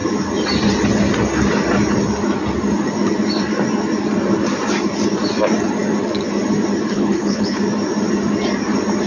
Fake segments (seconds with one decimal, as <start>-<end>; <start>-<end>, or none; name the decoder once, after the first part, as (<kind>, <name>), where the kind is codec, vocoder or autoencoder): 6.9-7.6 (codec, HILCodec)